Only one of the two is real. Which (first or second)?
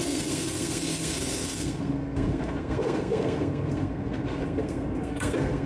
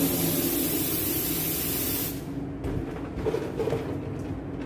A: second